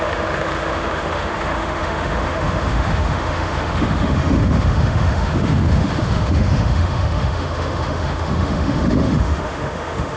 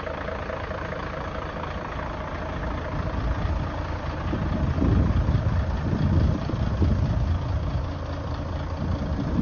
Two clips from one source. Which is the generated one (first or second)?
first